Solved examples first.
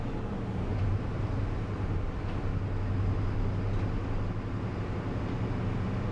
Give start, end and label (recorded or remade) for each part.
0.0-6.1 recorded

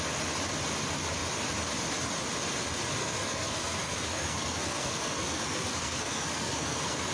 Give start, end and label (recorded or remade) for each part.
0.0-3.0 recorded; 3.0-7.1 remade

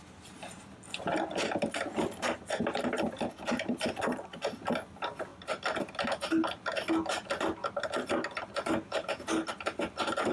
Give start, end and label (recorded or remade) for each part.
0.0-10.3 recorded

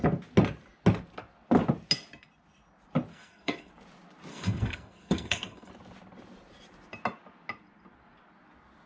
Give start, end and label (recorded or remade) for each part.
0.0-3.1 recorded; 3.1-3.7 remade; 3.7-4.3 recorded; 4.3-5.7 remade; 5.7-8.9 recorded